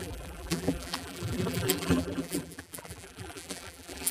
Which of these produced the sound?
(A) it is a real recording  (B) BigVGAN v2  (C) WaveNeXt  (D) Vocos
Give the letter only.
B